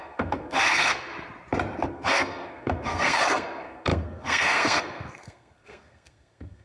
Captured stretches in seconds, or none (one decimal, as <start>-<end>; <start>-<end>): 1.1-1.9